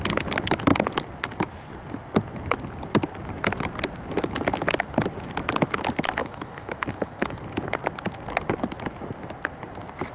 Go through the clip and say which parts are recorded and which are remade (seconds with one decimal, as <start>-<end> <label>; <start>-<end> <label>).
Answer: 0.0-6.2 recorded; 6.2-7.4 remade; 7.4-10.1 recorded